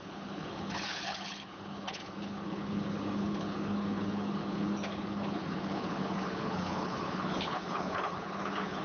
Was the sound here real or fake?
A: fake